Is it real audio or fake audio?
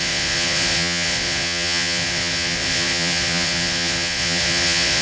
fake